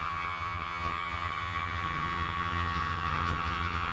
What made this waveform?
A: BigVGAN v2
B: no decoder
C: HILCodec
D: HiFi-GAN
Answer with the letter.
D